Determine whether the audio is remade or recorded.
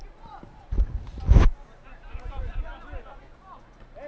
recorded